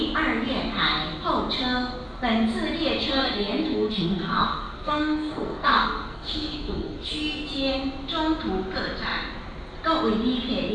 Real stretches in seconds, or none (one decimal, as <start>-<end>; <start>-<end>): 0.0-3.0; 7.1-10.7